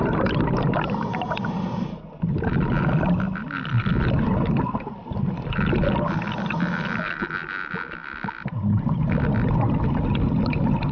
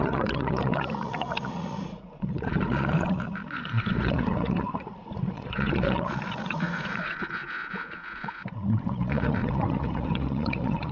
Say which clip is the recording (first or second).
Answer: first